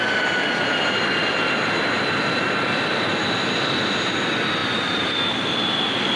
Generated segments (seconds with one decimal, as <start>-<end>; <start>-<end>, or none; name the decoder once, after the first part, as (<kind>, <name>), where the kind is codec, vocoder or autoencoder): none